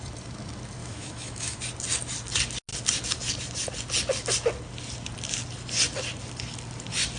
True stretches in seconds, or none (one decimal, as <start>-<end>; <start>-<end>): 0.0-0.8; 1.6-7.2